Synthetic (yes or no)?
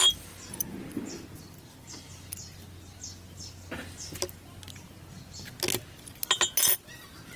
no